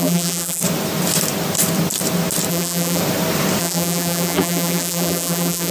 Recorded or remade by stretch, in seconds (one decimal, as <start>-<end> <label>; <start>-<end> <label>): 0.0-0.6 remade; 0.6-2.5 recorded; 2.5-3.0 remade; 3.0-3.6 recorded; 3.6-5.7 remade